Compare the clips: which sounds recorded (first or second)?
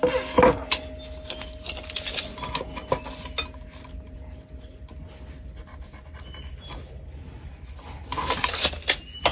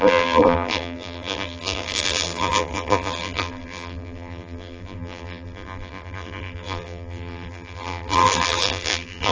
first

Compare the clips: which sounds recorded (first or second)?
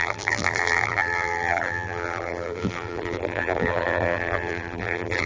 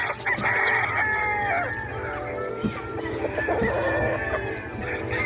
second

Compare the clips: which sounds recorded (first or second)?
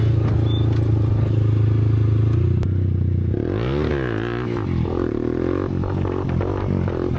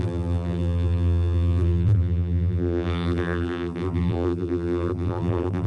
first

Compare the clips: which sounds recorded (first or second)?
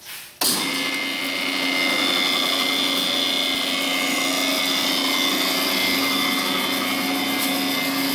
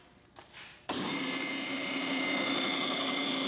first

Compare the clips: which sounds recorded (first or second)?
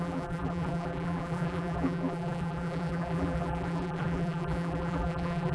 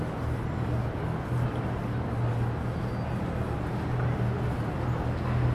second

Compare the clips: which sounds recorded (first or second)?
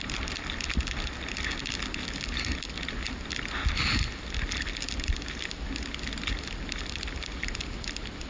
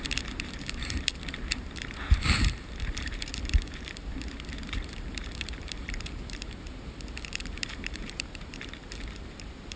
first